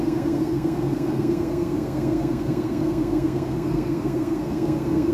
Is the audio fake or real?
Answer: fake